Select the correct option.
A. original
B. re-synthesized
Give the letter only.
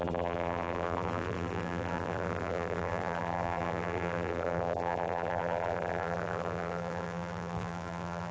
B